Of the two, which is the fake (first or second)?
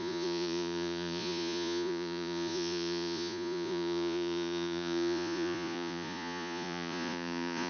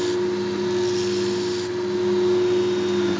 first